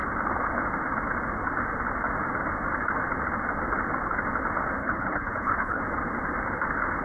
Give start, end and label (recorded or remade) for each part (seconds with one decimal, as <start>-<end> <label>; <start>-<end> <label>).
0.0-4.8 recorded; 4.8-5.8 remade; 5.8-7.0 recorded